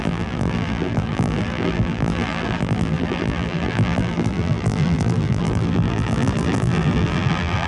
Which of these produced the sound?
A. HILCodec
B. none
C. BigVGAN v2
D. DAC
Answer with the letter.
C